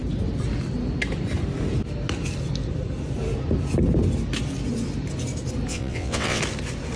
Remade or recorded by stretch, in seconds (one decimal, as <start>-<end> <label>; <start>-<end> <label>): 0.0-5.7 recorded; 5.7-6.4 remade; 6.4-7.0 recorded